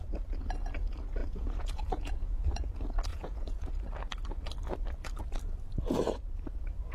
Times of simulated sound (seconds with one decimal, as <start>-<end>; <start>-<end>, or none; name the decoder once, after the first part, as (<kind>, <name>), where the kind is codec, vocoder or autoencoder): 1.2-2.7 (vocoder, Vocos); 3.1-3.7